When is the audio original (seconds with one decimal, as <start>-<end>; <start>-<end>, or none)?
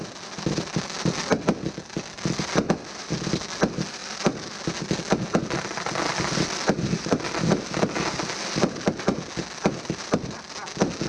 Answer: 0.0-11.1